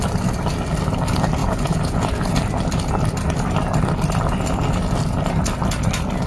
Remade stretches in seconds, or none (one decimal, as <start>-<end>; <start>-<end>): 1.4-2.2